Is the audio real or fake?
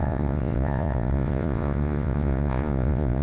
fake